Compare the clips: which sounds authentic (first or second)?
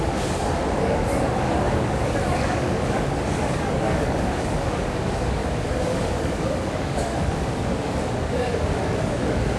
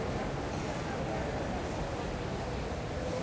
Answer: second